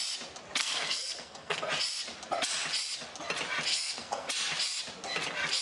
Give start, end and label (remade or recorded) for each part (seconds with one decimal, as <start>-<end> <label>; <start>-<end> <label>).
0.0-0.6 recorded; 0.6-1.7 remade; 1.7-3.7 recorded; 3.7-4.3 remade; 4.3-5.6 recorded